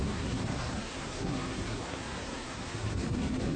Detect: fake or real fake